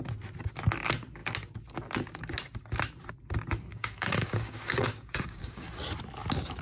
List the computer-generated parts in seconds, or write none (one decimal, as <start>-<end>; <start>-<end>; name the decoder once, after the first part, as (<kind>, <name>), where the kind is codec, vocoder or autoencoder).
3.7-5.7 (codec, DAC)